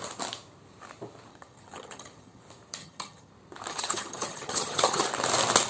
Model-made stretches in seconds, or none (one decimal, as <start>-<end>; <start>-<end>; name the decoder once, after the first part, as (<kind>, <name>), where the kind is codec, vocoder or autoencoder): 1.3-2.4 (vocoder, HiFi-GAN); 2.8-3.3; 3.7-5.1